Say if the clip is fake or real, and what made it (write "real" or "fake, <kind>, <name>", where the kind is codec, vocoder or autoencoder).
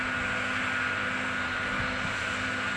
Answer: real